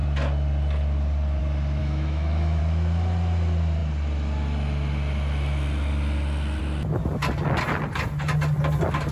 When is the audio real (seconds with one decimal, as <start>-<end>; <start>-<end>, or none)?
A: 0.0-1.8; 2.6-9.1